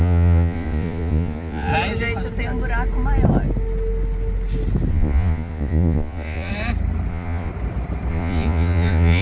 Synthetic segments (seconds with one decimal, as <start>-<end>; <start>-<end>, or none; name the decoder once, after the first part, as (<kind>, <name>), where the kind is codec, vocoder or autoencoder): 0.0-1.7 (vocoder, Vocos); 4.9-6.5; 7.1-7.5; 8.1-9.2